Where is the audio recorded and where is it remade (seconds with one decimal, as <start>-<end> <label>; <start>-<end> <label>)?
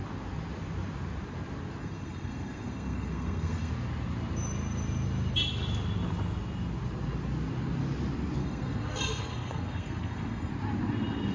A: 0.0-1.8 recorded; 1.8-3.7 remade; 3.7-8.4 recorded; 8.4-10.5 remade; 10.5-11.3 recorded